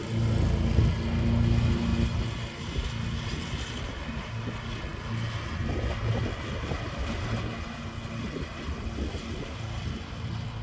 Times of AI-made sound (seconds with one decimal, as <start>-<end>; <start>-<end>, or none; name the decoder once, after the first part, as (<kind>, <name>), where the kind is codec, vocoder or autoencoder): none